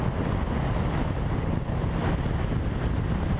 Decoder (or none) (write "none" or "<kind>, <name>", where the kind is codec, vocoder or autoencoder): none